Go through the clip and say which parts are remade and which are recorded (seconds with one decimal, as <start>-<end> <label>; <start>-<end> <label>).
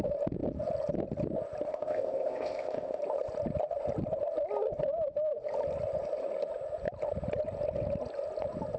0.0-1.7 recorded; 1.7-3.0 remade; 3.0-8.8 recorded